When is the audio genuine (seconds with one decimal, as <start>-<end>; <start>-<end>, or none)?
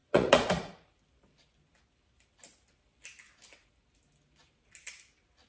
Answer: 0.7-5.5